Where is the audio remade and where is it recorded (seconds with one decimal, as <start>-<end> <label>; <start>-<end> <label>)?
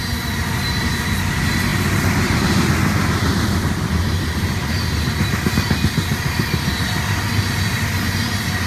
0.0-8.7 recorded